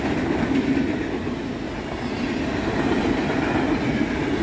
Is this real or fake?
real